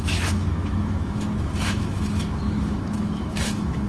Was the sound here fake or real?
fake